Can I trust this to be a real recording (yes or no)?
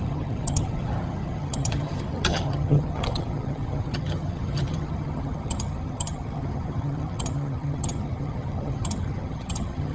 no